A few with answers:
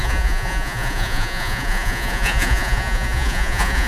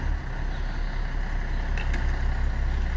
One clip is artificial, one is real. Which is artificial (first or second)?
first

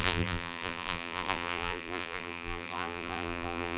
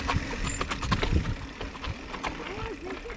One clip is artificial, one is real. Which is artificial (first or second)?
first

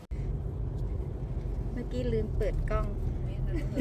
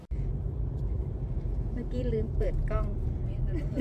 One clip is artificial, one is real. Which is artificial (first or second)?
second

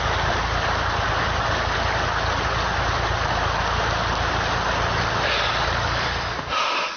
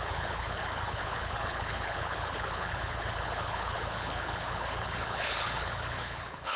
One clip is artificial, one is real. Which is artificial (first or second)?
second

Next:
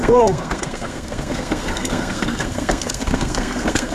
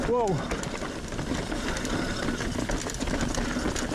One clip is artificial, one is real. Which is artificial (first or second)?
first